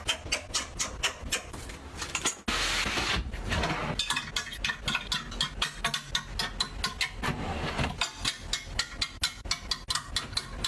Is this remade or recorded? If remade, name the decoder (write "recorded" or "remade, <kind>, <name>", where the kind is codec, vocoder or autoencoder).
recorded